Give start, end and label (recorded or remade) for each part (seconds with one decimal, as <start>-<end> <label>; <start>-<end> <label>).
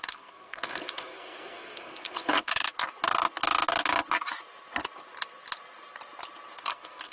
0.0-2.5 remade; 2.5-6.6 recorded; 6.6-7.1 remade